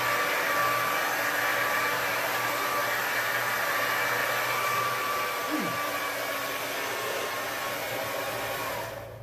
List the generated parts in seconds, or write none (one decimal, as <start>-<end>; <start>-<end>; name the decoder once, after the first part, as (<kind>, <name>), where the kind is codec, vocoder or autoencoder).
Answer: 1.5-2.5 (vocoder, BigVGAN v2); 4.2-6.1